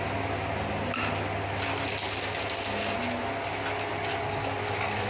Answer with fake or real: real